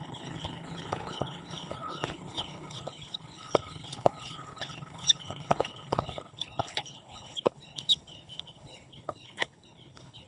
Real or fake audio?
fake